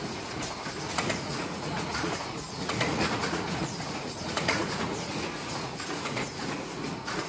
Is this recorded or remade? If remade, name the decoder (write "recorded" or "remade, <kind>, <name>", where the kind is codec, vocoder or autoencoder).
remade, vocoder, Vocos